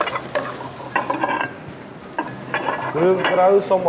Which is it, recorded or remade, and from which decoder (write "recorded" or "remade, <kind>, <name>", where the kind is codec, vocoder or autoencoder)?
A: recorded